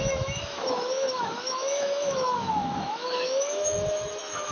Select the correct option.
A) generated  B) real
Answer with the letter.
A